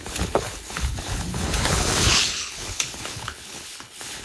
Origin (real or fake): fake